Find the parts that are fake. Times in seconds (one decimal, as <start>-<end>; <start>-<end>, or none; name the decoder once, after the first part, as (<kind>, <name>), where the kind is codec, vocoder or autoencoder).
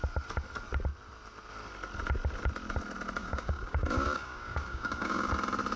3.2-5.3 (codec, DAC)